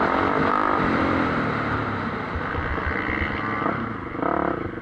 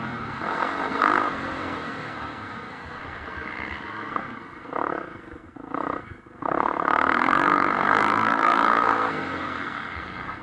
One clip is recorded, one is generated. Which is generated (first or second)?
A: second